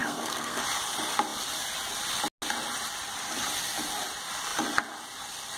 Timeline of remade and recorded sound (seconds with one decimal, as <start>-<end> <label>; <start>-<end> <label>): 0.0-0.6 remade; 0.6-5.6 recorded